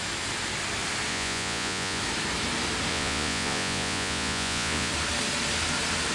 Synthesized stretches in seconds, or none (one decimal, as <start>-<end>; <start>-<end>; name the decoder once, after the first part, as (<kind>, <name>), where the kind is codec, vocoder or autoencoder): 1.1-2.0 (vocoder, Vocos); 2.9-4.9